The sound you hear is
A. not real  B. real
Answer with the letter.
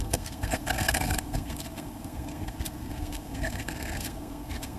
A